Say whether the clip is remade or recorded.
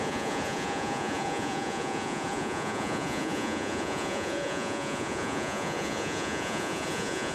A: remade